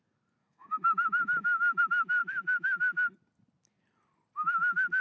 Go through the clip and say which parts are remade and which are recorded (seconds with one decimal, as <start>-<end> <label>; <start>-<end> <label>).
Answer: 0.0-0.4 recorded; 0.4-1.8 remade; 1.8-5.0 recorded